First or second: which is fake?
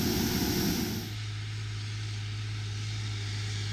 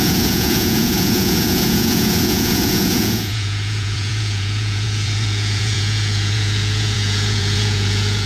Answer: second